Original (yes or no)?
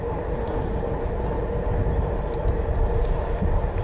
yes